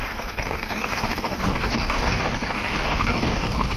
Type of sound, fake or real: fake